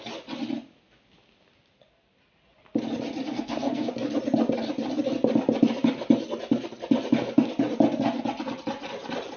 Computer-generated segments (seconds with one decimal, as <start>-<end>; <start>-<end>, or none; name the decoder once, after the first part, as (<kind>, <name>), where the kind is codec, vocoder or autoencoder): 3.3-3.9 (codec, SNAC)